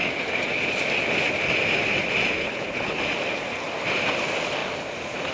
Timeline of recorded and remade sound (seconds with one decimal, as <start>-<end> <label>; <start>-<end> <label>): 0.0-2.4 recorded; 2.4-3.0 remade; 3.0-5.3 recorded